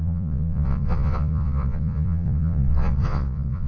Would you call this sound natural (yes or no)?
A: no